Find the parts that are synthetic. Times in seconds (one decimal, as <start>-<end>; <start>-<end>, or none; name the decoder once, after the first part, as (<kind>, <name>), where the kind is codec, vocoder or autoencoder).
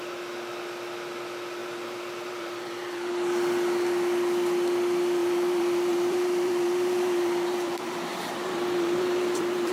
1.6-3.1 (vocoder, BigVGAN v2); 5.2-9.7